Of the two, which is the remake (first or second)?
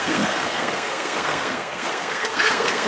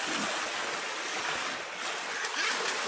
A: first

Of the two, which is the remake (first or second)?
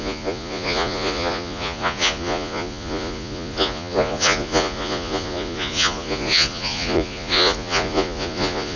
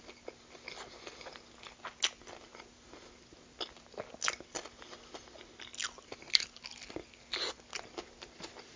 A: first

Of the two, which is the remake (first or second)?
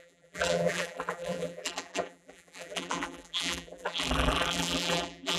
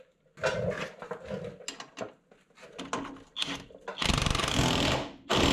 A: first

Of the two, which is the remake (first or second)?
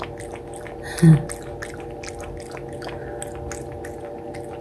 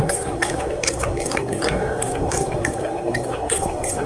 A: second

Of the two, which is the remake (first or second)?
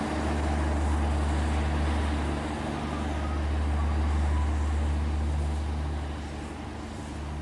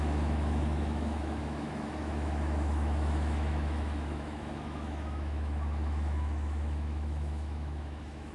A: second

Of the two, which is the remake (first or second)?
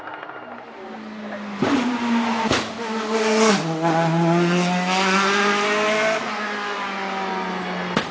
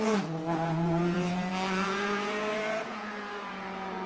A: second